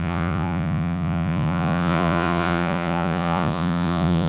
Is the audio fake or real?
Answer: fake